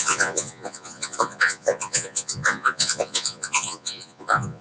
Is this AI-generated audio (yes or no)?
yes